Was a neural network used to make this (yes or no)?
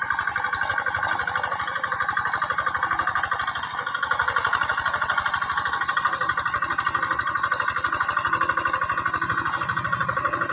no